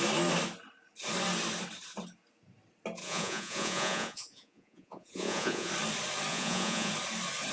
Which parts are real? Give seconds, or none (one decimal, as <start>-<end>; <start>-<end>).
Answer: 0.0-3.0; 5.7-6.3; 6.9-7.5